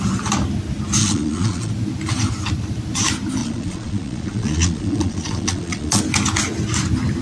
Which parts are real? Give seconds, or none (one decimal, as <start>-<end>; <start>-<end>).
0.0-1.0; 1.7-3.4; 6.0-7.2